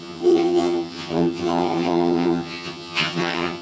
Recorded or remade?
remade